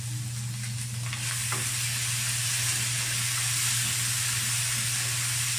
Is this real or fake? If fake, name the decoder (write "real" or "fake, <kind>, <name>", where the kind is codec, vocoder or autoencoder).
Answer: real